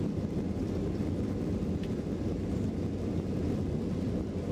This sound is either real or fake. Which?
real